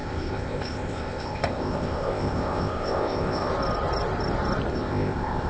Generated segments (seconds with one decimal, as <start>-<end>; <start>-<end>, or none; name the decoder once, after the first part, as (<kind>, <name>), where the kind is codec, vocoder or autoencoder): 0.0-3.5 (codec, ZipCodec); 4.7-5.5